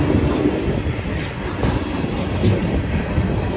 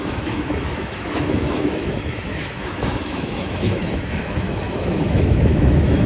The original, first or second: first